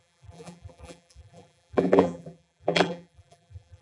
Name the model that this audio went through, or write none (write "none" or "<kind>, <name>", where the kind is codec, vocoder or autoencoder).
vocoder, BigVGAN v2